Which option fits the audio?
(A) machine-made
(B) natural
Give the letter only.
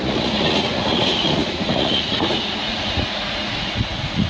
A